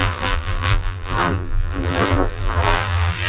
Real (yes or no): no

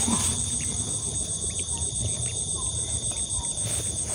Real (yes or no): no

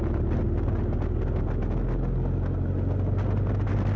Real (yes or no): yes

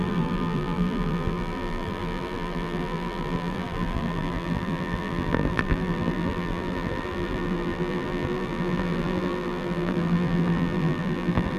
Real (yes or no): no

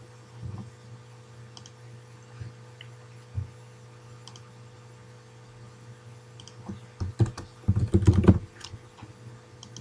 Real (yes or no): yes